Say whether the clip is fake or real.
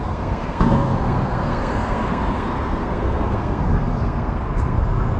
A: fake